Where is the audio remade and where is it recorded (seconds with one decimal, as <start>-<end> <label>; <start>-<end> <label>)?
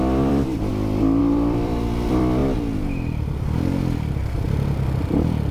0.0-0.7 remade; 0.7-1.2 recorded; 1.2-2.4 remade; 2.4-4.1 recorded; 4.1-5.5 remade